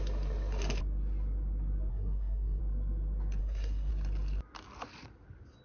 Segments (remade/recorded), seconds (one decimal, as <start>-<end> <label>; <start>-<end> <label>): 0.0-1.9 recorded; 1.9-2.6 remade; 2.6-3.4 recorded; 3.4-3.9 remade; 3.9-5.6 recorded